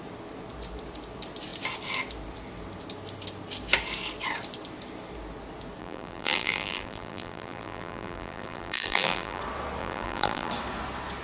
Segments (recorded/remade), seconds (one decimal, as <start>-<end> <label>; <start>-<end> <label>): 0.0-5.8 recorded; 5.8-9.4 remade; 9.4-9.8 recorded; 9.8-10.5 remade; 10.5-11.2 recorded